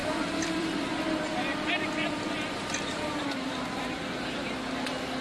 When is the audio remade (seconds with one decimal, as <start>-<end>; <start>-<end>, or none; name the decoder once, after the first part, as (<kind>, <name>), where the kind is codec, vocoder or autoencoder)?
0.0-3.1 (vocoder, BigVGAN v2)